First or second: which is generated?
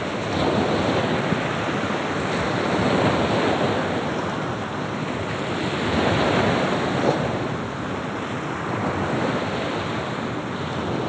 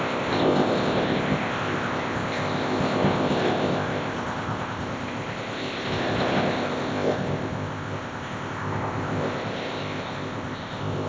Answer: second